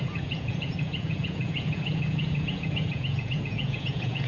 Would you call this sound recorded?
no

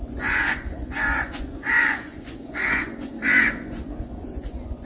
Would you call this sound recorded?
no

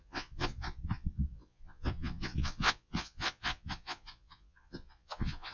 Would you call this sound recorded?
no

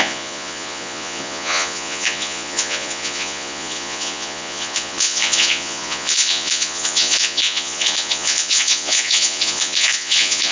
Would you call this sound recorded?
no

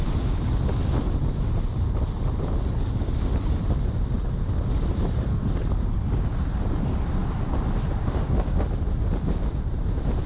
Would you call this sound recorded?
yes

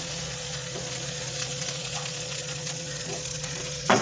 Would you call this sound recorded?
no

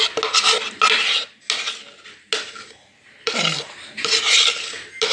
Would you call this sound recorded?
yes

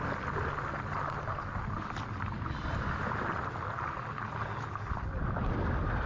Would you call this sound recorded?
yes